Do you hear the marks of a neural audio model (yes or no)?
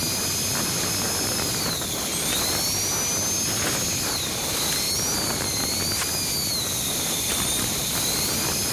no